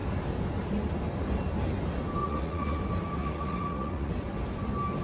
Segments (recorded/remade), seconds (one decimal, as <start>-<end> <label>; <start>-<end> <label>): 0.0-2.2 recorded; 2.2-2.8 remade; 2.8-3.2 recorded; 3.2-4.1 remade; 4.1-5.0 recorded